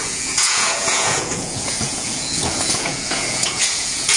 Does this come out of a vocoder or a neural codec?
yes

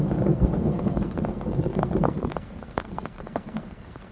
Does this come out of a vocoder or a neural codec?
yes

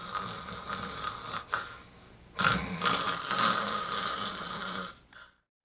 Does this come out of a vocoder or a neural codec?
no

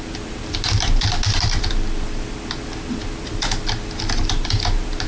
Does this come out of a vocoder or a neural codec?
no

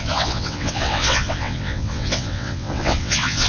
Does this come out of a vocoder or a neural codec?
yes